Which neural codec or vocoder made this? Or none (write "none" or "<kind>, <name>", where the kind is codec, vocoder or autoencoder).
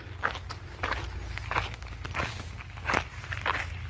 none